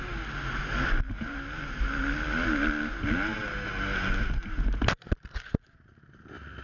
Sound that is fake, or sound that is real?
real